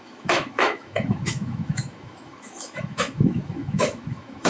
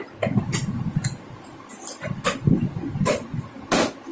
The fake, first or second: first